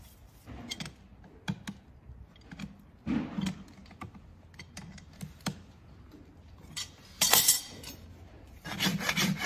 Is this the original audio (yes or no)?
yes